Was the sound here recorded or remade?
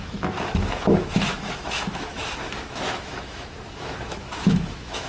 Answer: remade